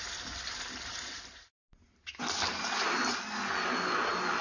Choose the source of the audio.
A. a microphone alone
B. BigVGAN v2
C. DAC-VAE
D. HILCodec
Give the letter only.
A